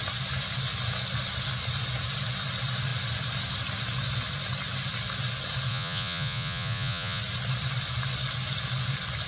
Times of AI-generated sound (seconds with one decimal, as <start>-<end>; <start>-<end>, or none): 5.7-7.2